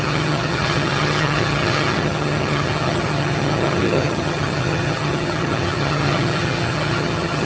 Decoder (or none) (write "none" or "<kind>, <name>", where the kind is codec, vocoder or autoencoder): vocoder, HiFi-GAN